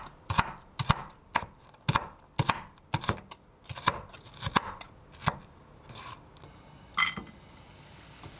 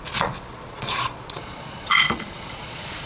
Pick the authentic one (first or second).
first